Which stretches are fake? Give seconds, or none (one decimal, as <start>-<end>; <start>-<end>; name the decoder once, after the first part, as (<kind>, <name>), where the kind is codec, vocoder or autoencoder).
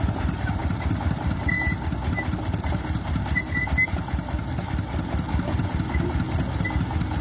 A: none